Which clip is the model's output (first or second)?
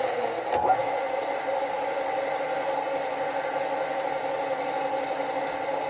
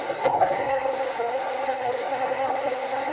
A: second